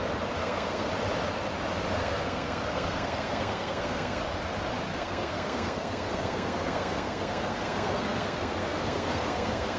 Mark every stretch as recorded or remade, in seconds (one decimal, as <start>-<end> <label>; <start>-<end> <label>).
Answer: 0.0-0.4 recorded; 0.4-0.9 remade; 0.9-2.0 recorded; 2.0-4.2 remade; 4.2-4.9 recorded; 4.9-9.8 remade

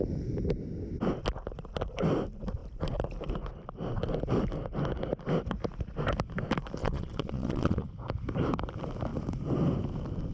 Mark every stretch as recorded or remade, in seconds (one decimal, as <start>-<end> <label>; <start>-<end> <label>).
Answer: 0.0-6.8 recorded; 6.8-7.9 remade; 7.9-10.3 recorded